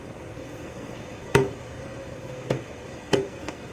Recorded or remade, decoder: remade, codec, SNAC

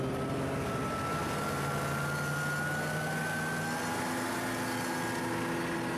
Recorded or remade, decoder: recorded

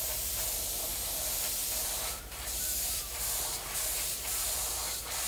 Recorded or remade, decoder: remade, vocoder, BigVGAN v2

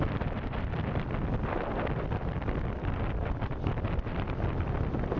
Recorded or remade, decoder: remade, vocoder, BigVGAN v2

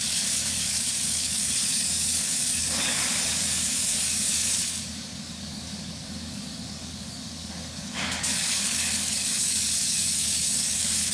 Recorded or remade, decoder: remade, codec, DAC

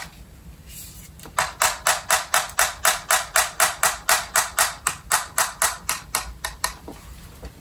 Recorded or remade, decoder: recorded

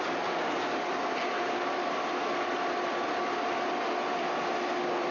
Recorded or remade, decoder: recorded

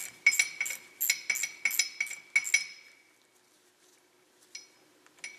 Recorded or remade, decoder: recorded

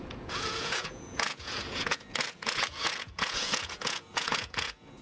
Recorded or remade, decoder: remade, vocoder, Vocos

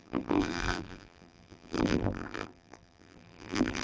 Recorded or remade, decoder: remade, vocoder, BigVGAN v2